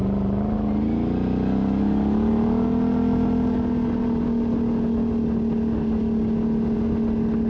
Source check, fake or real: real